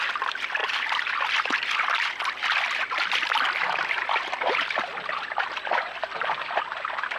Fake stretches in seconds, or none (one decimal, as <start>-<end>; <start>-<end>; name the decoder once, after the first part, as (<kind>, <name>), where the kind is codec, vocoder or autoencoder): 0.6-1.2 (vocoder, BigVGAN v2)